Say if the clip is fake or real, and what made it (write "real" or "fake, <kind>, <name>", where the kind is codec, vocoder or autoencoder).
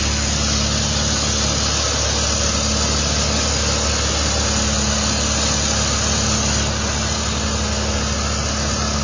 real